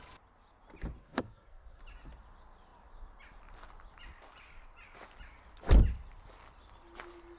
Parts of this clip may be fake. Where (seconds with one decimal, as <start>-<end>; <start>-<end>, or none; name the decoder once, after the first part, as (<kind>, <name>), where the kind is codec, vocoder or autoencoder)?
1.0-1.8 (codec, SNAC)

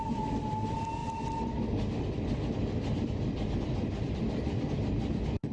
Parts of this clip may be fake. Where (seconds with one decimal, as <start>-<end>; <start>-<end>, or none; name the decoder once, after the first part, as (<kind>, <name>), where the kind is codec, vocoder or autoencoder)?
none

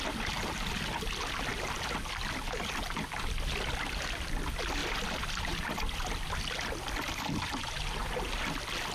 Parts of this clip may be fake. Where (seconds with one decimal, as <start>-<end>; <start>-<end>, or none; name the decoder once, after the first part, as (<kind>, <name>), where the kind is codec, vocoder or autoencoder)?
none